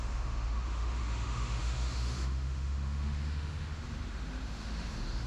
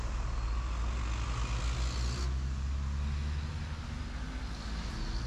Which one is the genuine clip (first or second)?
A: second